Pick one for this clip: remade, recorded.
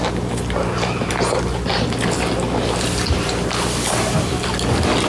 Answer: recorded